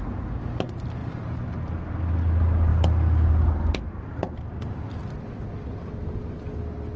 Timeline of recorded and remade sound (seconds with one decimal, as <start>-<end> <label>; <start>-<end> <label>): 0.0-7.0 recorded